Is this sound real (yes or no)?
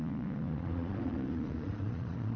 no